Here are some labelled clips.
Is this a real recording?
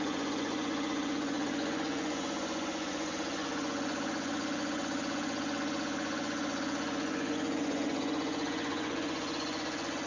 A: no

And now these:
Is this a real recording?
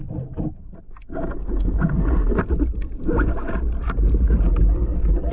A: yes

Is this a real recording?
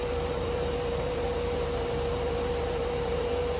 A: no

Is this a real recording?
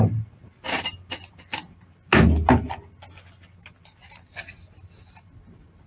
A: yes